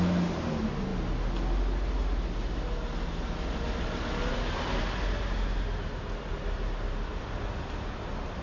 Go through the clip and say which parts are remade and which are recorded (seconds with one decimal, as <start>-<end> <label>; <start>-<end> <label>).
0.0-8.4 recorded